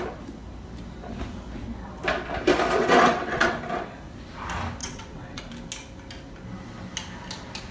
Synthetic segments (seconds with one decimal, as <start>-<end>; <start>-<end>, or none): 2.8-3.5; 4.8-5.4